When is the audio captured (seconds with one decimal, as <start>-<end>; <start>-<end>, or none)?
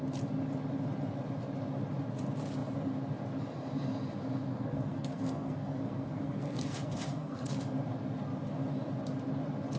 0.0-4.5; 7.6-9.8